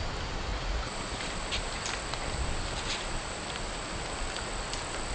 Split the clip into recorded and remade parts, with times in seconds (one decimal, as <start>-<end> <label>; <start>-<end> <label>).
0.0-0.5 recorded; 0.5-1.2 remade; 1.2-5.1 recorded